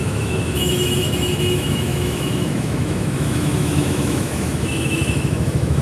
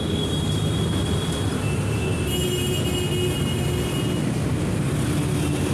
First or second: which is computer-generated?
first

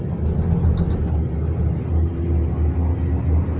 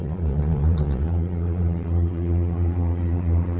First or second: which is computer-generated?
second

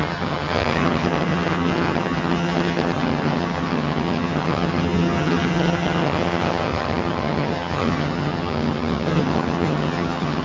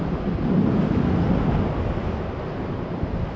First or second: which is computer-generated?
first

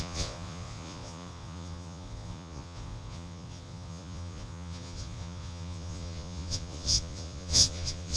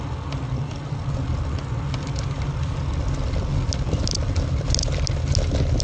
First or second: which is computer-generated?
first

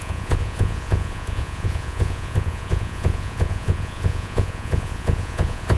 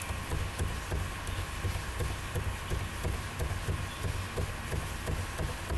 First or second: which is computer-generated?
first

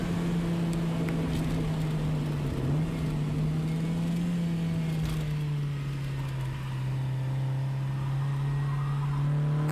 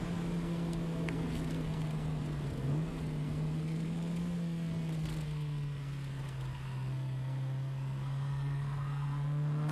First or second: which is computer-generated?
second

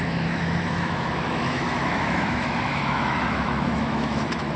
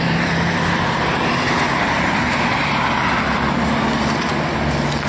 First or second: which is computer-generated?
first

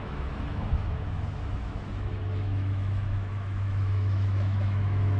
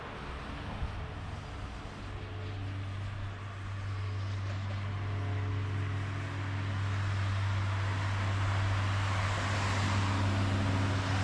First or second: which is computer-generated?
first